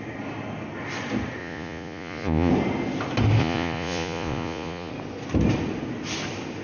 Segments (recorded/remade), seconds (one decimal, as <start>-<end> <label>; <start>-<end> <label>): 0.0-1.4 recorded; 1.4-2.5 remade; 2.5-3.4 recorded; 3.4-4.9 remade; 4.9-6.6 recorded

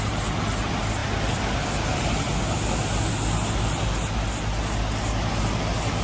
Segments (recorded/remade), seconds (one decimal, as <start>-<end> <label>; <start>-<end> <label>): 0.0-6.0 recorded

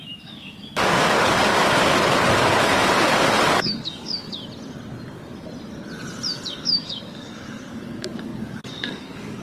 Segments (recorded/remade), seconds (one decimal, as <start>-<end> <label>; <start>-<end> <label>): 0.0-1.5 remade; 1.5-2.4 recorded; 2.4-4.4 remade; 4.4-6.5 recorded; 6.5-9.4 remade

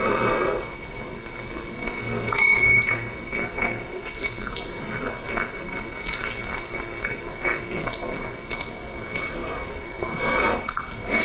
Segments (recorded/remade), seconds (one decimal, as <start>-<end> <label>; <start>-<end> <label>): 0.0-11.2 remade

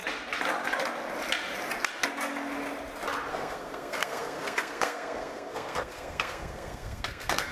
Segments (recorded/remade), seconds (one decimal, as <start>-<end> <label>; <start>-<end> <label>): 0.0-3.3 recorded; 3.3-7.5 remade